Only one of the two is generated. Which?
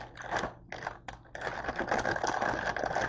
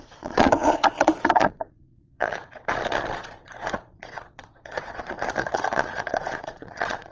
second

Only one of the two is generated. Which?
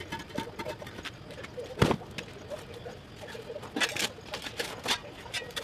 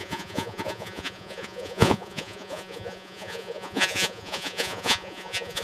second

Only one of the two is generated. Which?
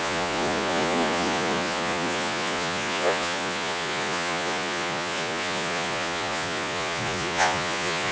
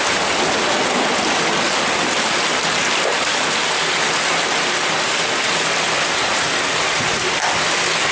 first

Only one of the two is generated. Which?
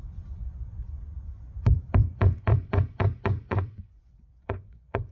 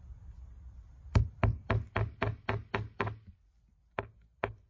first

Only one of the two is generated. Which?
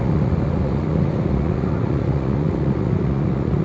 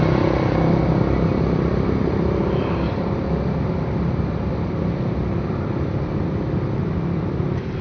first